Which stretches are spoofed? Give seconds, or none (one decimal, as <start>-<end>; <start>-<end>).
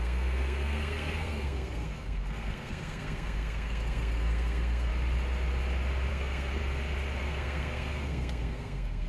0.0-4.9; 6.1-6.6; 7.2-9.1